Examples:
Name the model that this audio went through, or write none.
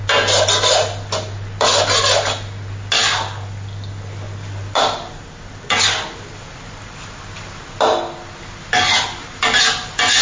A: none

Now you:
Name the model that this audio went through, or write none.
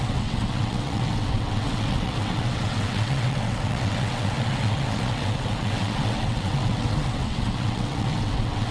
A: vocoder, WaveNeXt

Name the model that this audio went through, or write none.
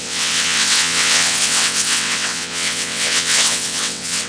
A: vocoder, WaveNeXt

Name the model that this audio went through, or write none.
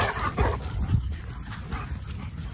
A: none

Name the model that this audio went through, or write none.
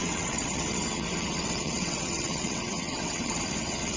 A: vocoder, WaveNeXt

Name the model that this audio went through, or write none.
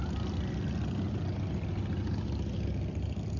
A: none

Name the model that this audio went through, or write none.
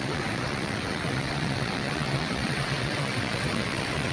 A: vocoder, WaveNeXt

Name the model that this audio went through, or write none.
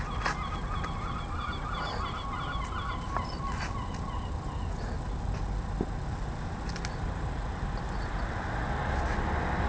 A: none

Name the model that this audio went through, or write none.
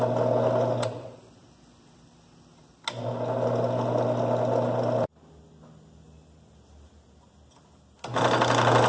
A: none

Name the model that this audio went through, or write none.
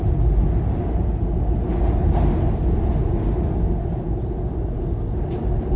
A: none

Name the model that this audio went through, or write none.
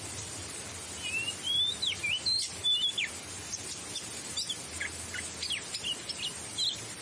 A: none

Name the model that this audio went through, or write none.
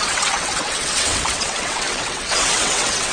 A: vocoder, WaveNeXt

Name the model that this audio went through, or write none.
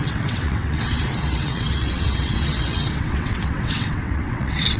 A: vocoder, WaveNeXt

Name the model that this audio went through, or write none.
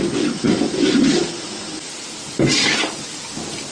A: none